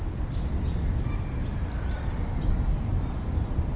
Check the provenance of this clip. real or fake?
real